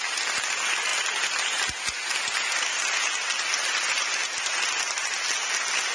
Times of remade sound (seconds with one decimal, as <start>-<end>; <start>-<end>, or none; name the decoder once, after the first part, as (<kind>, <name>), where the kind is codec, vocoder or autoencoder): none